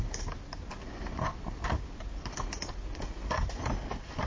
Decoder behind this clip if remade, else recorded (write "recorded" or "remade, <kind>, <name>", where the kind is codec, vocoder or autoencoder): recorded